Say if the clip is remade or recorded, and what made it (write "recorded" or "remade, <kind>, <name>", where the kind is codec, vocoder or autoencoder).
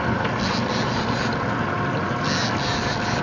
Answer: recorded